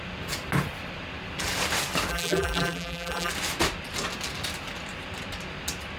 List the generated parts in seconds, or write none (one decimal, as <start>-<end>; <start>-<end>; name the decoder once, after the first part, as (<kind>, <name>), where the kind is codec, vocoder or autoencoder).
2.1-3.3 (vocoder, BigVGAN v2)